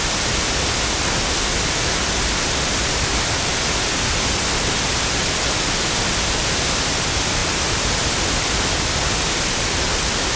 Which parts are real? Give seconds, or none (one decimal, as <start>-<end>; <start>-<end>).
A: 0.0-10.4